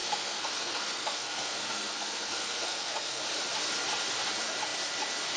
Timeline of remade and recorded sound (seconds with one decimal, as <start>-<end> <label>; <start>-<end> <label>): 0.0-3.2 remade; 3.2-5.4 recorded